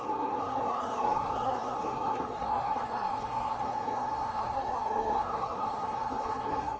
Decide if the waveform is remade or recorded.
remade